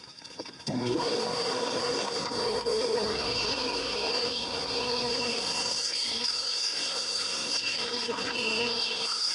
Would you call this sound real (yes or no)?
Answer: no